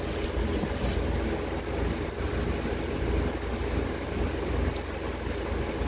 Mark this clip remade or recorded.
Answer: recorded